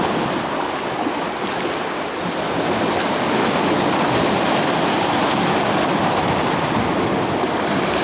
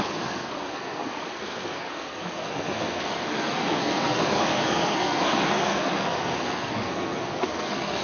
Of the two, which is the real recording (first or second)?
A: first